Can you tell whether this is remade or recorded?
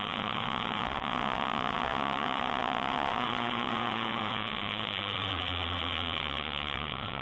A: remade